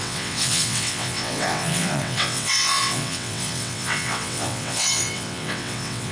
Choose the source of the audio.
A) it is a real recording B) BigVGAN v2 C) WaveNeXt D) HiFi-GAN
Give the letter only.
C